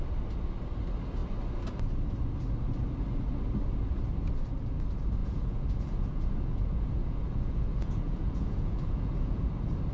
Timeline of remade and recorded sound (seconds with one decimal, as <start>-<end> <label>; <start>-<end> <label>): 0.0-5.2 recorded; 5.2-9.4 remade; 9.4-9.9 recorded

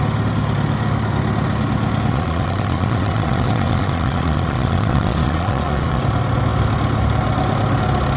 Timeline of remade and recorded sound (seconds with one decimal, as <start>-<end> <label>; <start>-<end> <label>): 0.0-2.1 recorded; 2.1-6.0 remade; 6.0-8.2 recorded

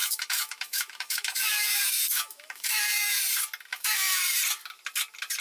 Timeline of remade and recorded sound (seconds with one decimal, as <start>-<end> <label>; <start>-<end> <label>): 0.0-3.2 remade; 3.2-3.7 recorded; 3.7-4.2 remade; 4.2-5.4 recorded

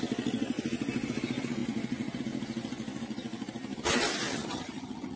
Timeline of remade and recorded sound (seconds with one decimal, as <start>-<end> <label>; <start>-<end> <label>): 0.0-4.3 recorded; 4.3-5.2 remade

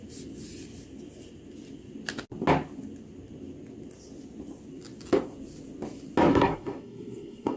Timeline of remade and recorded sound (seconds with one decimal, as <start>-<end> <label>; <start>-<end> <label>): 0.0-6.3 recorded; 6.3-7.6 remade